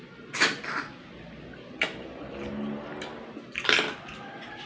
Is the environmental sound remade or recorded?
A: recorded